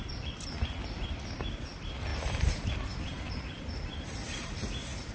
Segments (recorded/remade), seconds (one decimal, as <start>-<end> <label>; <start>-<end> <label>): 0.0-2.1 recorded; 2.1-2.7 remade; 2.7-3.1 recorded; 3.1-4.5 remade; 4.5-5.1 recorded